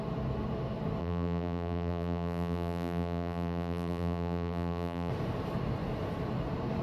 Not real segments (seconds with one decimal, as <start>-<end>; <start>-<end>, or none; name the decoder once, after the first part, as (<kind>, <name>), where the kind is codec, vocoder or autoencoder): 1.0-5.1 (vocoder, BigVGAN v2)